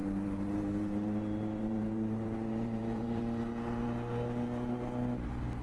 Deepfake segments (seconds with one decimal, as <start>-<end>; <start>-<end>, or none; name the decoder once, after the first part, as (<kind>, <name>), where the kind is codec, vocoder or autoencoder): 0.0-3.2 (vocoder, BigVGAN v2)